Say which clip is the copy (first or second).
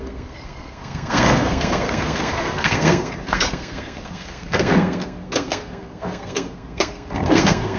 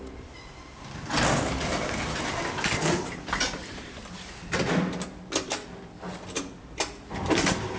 first